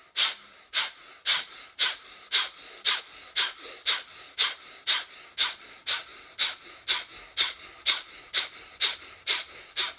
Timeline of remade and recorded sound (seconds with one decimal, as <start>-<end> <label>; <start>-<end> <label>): 0.0-1.3 recorded; 1.3-3.0 remade; 3.0-10.0 recorded